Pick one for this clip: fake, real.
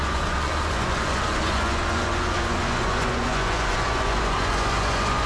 fake